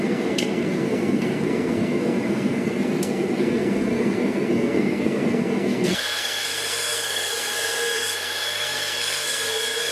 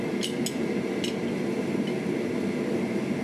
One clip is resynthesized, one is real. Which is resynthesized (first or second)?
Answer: first